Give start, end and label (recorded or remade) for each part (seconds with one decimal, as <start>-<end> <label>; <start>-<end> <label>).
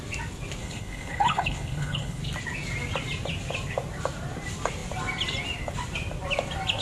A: 0.0-0.6 recorded; 0.6-2.2 remade; 2.2-6.8 recorded